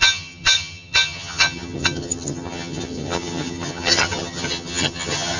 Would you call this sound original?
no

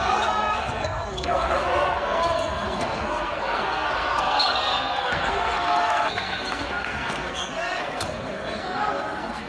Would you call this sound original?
no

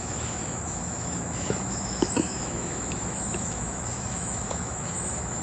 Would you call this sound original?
no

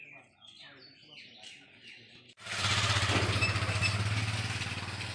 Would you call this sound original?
yes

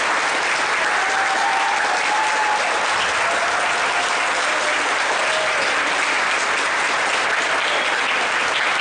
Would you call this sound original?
yes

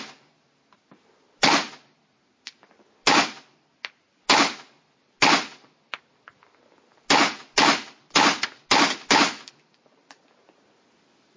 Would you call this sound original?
yes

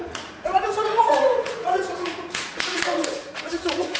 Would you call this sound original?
no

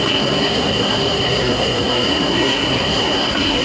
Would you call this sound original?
no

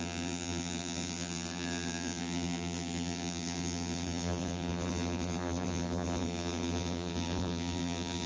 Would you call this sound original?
no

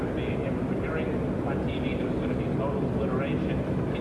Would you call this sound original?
yes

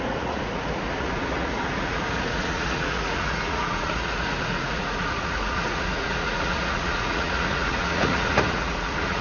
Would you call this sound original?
no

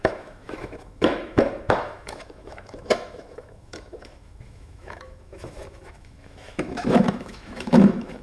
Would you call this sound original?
no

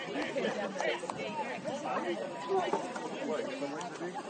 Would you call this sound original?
yes